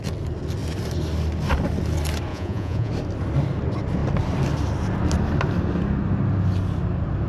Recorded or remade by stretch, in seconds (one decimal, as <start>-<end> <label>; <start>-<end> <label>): 0.0-2.3 recorded; 2.3-2.9 remade; 2.9-7.3 recorded

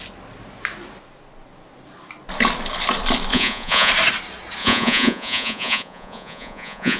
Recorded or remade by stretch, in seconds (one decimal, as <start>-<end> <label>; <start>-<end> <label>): 0.0-3.3 recorded; 3.3-3.9 remade; 3.9-4.6 recorded; 4.6-7.0 remade